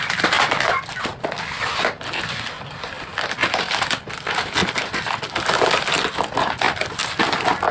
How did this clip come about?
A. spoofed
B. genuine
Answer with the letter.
B